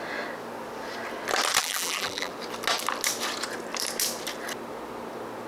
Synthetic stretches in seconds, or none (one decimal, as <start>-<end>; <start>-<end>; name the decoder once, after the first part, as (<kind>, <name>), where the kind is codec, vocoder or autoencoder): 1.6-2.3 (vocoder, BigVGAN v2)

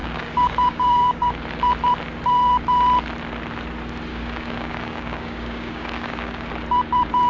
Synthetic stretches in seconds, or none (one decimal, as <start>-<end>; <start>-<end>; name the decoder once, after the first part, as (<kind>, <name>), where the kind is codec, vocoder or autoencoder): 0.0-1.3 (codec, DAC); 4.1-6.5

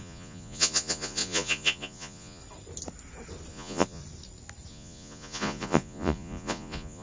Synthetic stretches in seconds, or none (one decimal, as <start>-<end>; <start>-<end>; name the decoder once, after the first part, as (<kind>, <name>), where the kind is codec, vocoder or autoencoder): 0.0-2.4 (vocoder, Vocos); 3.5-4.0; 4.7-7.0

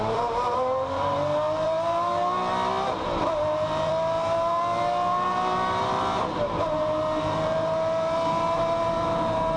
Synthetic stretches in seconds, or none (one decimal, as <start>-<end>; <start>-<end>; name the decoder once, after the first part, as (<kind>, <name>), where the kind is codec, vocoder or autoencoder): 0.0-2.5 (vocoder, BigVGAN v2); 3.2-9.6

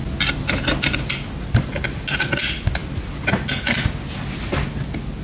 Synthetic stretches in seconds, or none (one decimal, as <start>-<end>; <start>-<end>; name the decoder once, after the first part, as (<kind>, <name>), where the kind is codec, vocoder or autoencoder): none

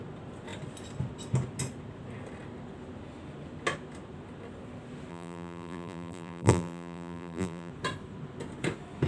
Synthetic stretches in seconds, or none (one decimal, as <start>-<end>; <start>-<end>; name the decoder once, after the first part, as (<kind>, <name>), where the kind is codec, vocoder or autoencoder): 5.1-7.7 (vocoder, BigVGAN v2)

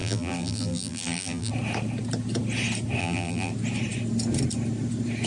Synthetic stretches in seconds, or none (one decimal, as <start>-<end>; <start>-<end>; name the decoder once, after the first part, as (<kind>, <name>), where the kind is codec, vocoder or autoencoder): 0.0-1.5 (vocoder, BigVGAN v2); 3.0-3.5